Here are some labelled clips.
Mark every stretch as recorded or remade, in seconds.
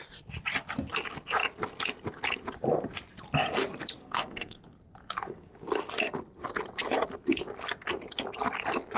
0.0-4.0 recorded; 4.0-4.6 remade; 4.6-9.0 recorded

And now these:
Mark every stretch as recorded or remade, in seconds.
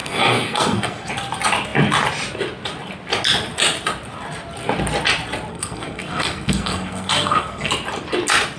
0.0-1.1 remade; 1.1-5.5 recorded; 5.5-7.7 remade; 7.7-8.6 recorded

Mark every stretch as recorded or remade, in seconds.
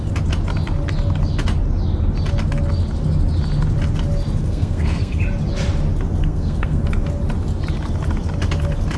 0.0-4.4 recorded; 4.4-5.2 remade; 5.2-6.2 recorded; 6.2-6.8 remade; 6.8-9.0 recorded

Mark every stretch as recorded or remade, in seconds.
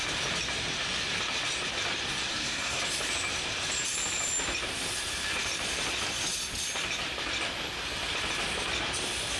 0.0-2.3 recorded; 2.3-2.8 remade; 2.8-9.4 recorded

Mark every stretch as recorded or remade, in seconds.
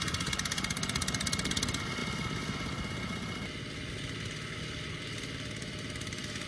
0.0-6.5 recorded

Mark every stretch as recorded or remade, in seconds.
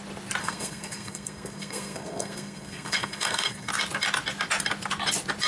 0.0-0.4 recorded; 0.4-3.7 remade; 3.7-5.5 recorded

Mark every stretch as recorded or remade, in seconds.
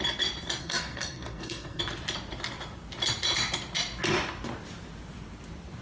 0.0-0.6 recorded; 0.6-1.8 remade; 1.8-5.8 recorded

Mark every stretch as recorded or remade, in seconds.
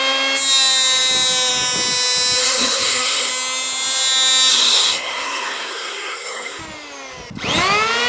0.0-2.4 recorded; 2.4-3.3 remade; 3.3-4.5 recorded; 4.5-6.6 remade; 6.6-8.1 recorded